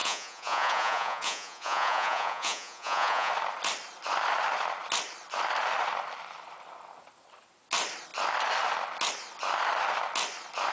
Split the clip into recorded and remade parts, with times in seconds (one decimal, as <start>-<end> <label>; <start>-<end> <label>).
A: 0.0-3.3 remade; 3.3-10.7 recorded